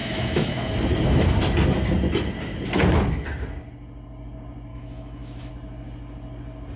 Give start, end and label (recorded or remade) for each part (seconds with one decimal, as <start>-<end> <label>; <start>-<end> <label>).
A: 0.0-0.7 remade; 0.7-4.7 recorded; 4.7-5.5 remade; 5.5-6.8 recorded